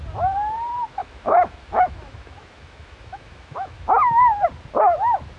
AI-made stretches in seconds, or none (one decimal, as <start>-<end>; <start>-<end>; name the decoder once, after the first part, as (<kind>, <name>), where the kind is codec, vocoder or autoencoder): 1.0-4.2 (autoencoder, DAC-VAE)